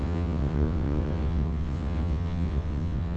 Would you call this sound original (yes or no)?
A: no